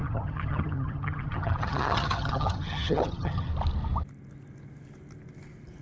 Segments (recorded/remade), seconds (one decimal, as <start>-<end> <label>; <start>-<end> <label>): 0.0-3.5 remade; 3.5-5.8 recorded